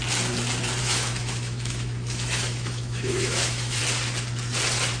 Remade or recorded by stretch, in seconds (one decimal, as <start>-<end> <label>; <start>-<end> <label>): 0.0-0.8 recorded; 0.8-3.8 remade; 3.8-5.0 recorded